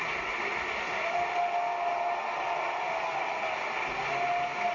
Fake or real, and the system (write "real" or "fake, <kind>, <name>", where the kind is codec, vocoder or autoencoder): real